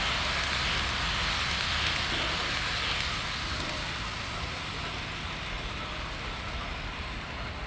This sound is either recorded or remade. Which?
recorded